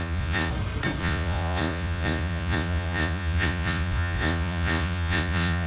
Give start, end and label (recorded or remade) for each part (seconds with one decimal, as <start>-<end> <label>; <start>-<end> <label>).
0.0-0.5 remade; 0.5-1.0 recorded; 1.0-5.7 remade